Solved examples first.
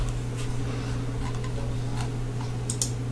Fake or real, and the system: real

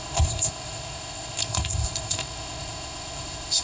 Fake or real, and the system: fake, codec, ZipCodec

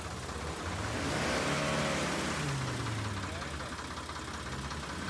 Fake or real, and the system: real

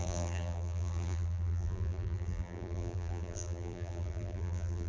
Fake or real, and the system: fake, vocoder, BigVGAN v2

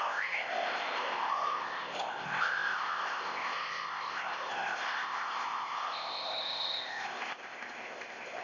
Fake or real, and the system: fake, codec, ZipCodec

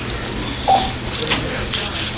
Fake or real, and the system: real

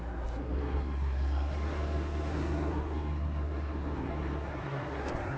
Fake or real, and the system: fake, codec, SNAC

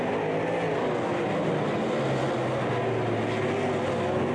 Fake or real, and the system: real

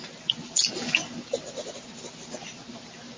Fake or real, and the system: real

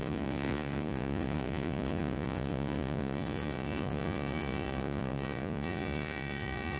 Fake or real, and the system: fake, vocoder, Vocos